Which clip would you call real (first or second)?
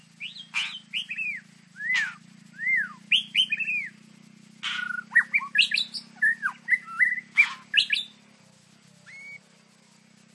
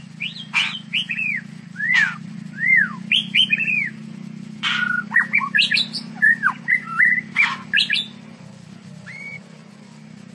first